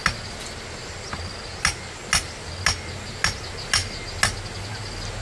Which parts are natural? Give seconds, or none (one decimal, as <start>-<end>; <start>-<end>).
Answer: 0.0-5.2